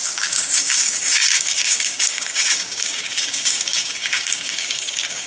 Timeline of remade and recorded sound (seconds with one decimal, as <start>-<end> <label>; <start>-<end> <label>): 0.0-5.3 remade